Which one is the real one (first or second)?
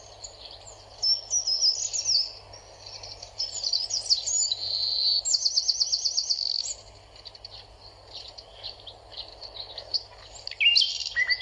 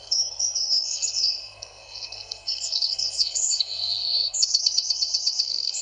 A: first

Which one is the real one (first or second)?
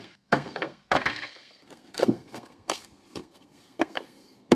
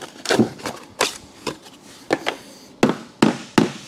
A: second